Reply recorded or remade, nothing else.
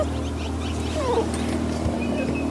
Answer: recorded